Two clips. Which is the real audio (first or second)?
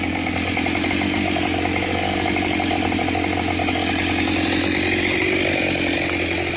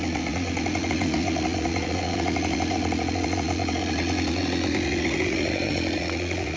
first